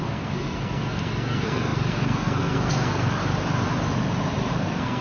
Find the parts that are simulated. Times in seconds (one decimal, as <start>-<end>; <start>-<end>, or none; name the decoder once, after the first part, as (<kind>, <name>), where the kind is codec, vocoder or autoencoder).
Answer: 0.0-3.2 (codec, SNAC); 4.5-5.0